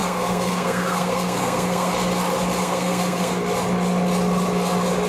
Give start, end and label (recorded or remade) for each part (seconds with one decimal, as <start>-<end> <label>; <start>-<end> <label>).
0.0-1.9 remade; 1.9-2.6 recorded; 2.6-3.4 remade; 3.4-5.1 recorded